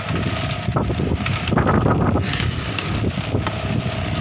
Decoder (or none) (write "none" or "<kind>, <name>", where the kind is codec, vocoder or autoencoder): none